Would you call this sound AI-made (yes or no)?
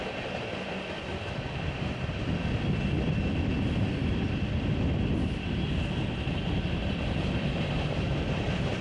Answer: no